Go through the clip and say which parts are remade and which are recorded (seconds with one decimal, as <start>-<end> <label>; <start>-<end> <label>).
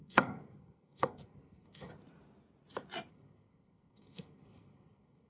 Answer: 0.0-1.9 remade; 1.9-3.1 recorded; 3.1-5.3 remade